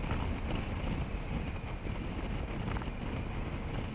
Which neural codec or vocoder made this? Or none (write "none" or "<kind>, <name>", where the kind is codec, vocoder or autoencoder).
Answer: none